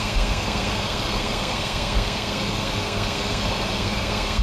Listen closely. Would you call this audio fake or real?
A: fake